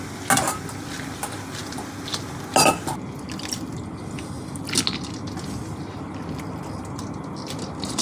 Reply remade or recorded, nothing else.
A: recorded